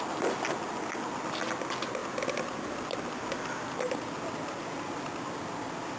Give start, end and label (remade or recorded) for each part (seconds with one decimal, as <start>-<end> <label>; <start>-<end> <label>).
0.0-2.0 remade; 2.0-4.8 recorded; 4.8-6.0 remade